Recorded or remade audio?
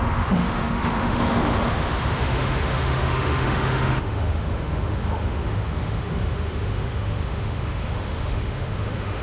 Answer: remade